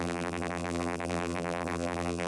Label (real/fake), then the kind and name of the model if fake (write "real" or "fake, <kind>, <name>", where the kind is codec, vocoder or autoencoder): fake, vocoder, BigVGAN v2